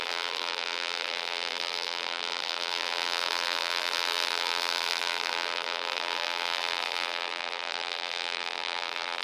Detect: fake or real fake